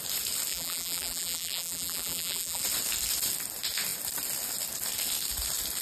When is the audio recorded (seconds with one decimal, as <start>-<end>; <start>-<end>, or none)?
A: 0.0-0.5; 2.6-5.8